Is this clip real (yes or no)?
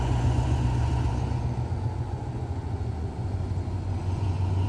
no